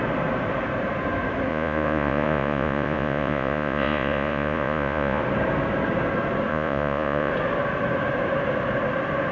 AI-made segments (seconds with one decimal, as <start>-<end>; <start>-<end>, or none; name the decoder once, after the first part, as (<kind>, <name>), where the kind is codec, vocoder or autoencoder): 1.5-5.2 (vocoder, Vocos); 6.5-7.3